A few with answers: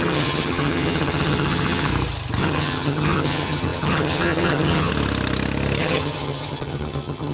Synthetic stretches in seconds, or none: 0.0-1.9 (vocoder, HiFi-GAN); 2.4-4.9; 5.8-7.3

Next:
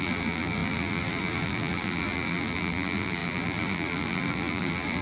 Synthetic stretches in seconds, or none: 0.0-5.0 (vocoder, BigVGAN v2)